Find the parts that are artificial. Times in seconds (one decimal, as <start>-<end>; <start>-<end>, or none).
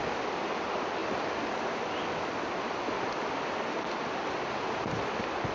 none